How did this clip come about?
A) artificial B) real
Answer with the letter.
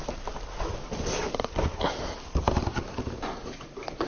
B